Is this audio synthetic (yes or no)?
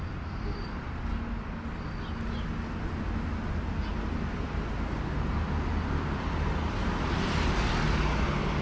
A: no